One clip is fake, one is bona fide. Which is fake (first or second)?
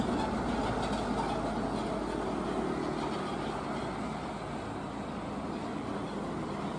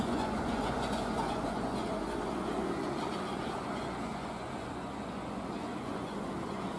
second